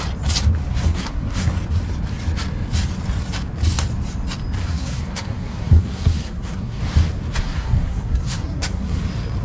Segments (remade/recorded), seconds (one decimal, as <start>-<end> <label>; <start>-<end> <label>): 0.0-0.7 recorded; 0.7-1.5 remade; 1.5-4.6 recorded; 4.6-6.8 remade; 6.8-7.4 recorded; 7.4-9.0 remade; 9.0-9.4 recorded